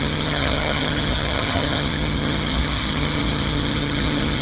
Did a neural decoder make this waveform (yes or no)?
yes